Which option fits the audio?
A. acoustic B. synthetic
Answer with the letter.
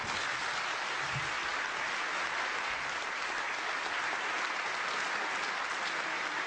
A